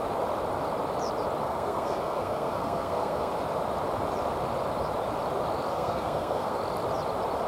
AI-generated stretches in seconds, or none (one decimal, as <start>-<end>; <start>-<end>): 1.4-3.3; 5.7-6.6